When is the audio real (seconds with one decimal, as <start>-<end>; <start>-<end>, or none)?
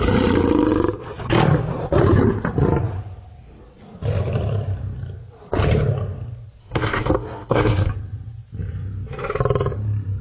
0.0-6.6; 7.9-10.2